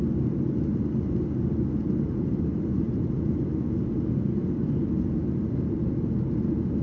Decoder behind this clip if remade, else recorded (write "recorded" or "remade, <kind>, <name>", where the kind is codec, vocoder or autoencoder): recorded